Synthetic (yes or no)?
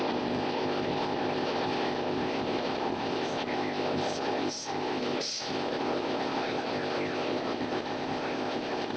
yes